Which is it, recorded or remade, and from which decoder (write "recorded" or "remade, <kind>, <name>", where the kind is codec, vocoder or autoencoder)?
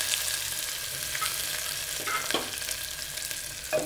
recorded